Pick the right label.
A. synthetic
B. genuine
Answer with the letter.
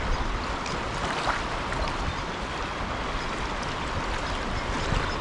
B